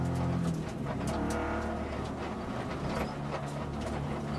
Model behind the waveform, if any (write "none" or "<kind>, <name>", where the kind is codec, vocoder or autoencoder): none